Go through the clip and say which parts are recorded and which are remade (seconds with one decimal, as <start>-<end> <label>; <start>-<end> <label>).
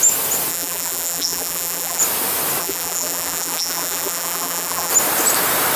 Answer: 0.0-0.5 recorded; 0.5-2.0 remade; 2.0-2.6 recorded; 2.6-4.9 remade; 4.9-5.8 recorded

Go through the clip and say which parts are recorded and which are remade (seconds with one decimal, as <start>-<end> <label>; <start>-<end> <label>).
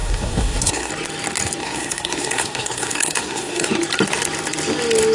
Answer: 0.0-0.9 remade; 0.9-1.6 recorded; 1.6-3.7 remade; 3.7-5.1 recorded